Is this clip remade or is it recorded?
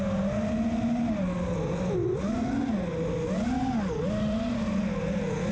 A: recorded